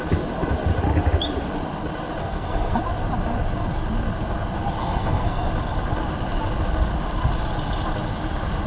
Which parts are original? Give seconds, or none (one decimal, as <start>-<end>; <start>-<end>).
0.0-2.2; 2.8-4.8; 5.5-8.7

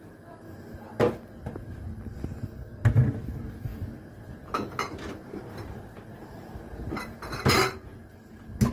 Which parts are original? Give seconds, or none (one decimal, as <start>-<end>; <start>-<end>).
0.0-8.7

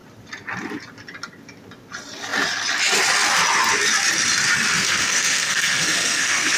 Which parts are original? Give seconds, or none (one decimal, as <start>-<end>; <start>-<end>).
0.0-4.7